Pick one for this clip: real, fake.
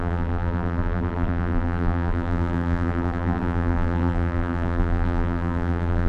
fake